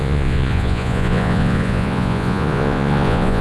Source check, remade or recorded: remade